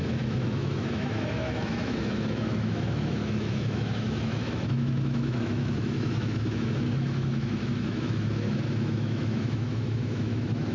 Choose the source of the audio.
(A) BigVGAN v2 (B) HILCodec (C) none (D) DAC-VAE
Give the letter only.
D